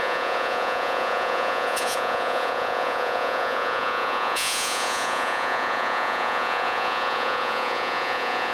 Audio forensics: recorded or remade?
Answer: remade